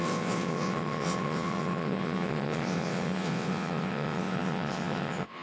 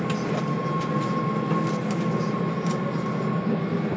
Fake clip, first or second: first